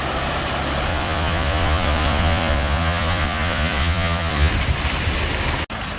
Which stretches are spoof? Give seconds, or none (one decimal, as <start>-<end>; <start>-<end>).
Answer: 0.9-4.5